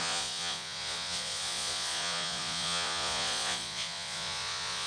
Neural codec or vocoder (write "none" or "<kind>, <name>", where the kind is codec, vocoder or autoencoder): vocoder, Vocos